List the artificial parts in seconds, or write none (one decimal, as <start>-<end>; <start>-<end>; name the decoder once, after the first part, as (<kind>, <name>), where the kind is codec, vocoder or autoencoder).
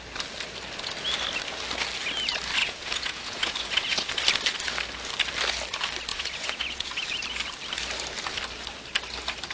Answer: 2.6-4.1 (vocoder, Vocos); 6.1-6.9